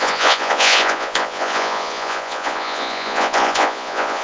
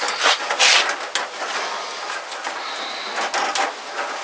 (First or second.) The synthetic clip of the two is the first